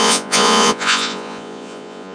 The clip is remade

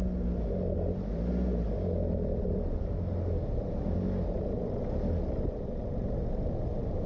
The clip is recorded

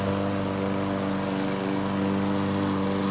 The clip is recorded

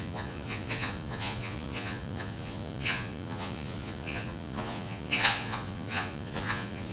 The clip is remade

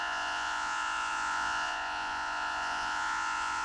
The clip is remade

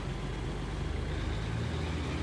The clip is recorded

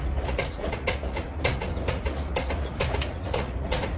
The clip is remade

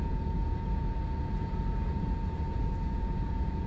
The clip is remade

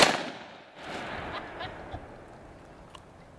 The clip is recorded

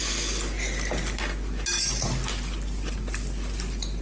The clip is recorded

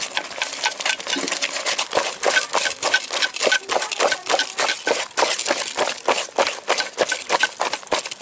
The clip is recorded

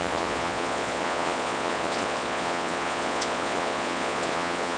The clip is remade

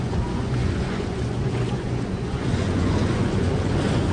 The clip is remade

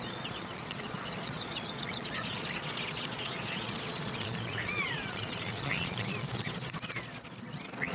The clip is remade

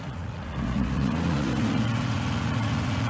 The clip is remade